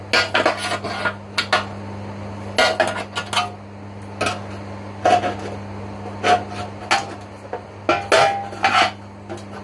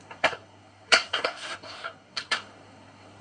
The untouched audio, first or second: first